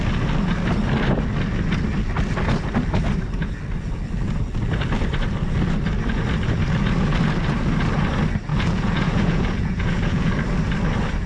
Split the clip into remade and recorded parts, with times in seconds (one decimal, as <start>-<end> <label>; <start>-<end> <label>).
0.0-8.5 recorded; 8.5-10.3 remade; 10.3-11.3 recorded

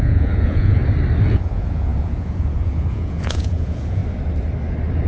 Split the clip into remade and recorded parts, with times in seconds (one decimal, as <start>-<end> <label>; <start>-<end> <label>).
0.0-0.8 remade; 0.8-1.3 recorded; 1.3-4.0 remade; 4.0-5.1 recorded

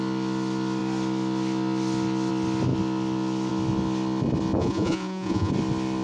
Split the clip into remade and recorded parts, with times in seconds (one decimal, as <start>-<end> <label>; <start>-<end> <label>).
0.0-4.6 recorded; 4.6-5.5 remade; 5.5-6.0 recorded